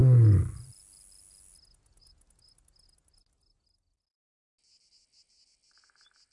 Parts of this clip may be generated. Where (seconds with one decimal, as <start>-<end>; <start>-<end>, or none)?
none